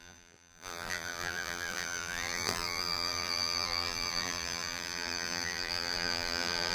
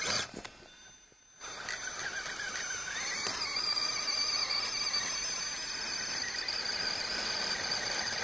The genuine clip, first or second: second